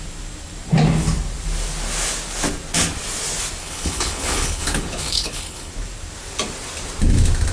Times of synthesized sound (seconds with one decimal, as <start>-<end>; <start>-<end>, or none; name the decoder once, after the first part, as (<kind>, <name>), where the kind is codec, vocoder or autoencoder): 3.6-5.7 (codec, HILCodec)